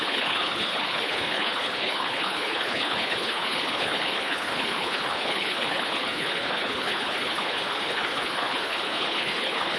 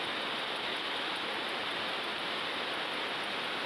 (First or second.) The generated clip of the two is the first